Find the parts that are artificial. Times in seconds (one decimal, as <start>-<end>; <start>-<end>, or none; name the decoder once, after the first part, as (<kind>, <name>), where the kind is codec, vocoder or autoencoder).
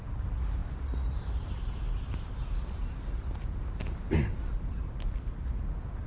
none